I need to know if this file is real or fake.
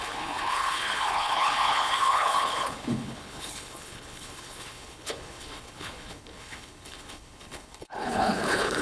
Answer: fake